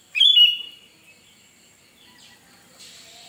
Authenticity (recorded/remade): remade